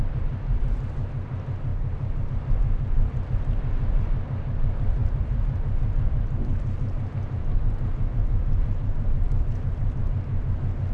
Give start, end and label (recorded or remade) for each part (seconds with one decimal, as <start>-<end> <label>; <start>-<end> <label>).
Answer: 0.0-1.7 recorded; 1.7-2.3 remade; 2.3-5.0 recorded; 5.0-9.7 remade; 9.7-10.9 recorded